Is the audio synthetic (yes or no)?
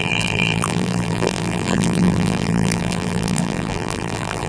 yes